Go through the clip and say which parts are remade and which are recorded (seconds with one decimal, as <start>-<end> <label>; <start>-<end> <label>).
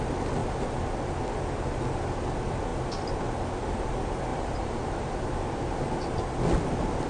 0.0-4.3 recorded; 4.3-6.2 remade; 6.2-7.1 recorded